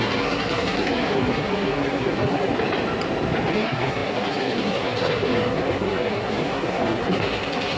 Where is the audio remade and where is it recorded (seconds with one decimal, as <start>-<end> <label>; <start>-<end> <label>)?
0.0-2.5 remade; 2.5-3.5 recorded; 3.5-7.8 remade